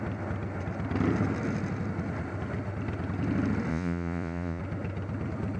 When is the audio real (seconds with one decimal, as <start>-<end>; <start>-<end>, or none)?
0.0-3.7; 4.6-5.6